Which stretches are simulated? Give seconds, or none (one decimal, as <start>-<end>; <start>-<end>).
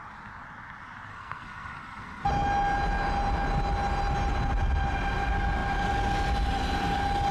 1.1-2.3